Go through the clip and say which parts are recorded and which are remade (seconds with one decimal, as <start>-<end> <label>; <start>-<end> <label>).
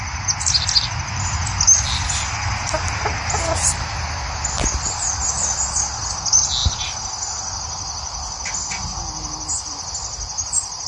0.0-10.9 recorded